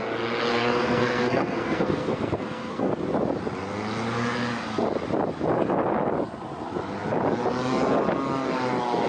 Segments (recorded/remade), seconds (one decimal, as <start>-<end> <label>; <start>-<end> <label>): 0.0-0.5 recorded; 0.5-2.9 remade; 2.9-9.1 recorded